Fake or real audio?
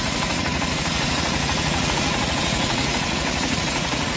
fake